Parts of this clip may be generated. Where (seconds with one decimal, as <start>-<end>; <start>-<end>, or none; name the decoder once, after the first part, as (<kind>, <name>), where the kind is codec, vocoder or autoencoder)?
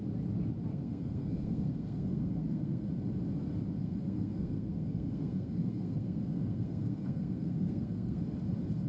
0.7-2.9 (codec, SNAC); 3.8-8.2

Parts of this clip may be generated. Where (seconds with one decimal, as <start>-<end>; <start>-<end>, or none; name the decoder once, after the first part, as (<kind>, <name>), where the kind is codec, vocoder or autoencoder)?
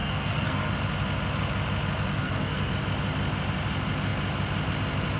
0.0-0.7 (codec, SNAC); 2.1-2.7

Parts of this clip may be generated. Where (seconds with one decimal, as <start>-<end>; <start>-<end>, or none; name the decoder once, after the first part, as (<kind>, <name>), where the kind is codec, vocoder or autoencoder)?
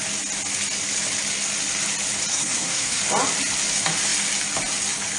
2.3-3.0 (codec, SNAC)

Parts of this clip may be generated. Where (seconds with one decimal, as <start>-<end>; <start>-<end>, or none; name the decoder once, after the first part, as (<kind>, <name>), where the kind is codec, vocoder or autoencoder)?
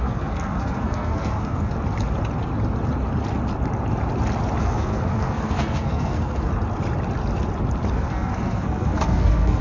0.0-1.7 (codec, SNAC); 4.6-6.5; 7.9-9.6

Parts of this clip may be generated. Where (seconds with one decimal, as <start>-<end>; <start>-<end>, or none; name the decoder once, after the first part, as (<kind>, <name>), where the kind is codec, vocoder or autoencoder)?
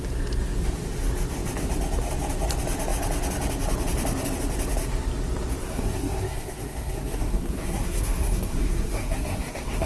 5.6-9.9 (codec, SNAC)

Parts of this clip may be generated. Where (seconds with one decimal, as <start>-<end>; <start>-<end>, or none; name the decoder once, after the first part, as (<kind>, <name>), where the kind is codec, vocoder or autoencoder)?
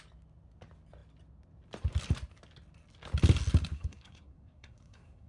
3.7-5.3 (codec, SNAC)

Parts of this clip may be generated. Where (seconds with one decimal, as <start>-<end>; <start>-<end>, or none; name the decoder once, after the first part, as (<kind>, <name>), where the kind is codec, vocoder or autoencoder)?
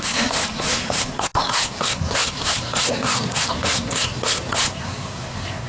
0.0-5.7 (codec, SNAC)